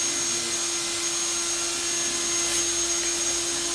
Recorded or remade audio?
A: recorded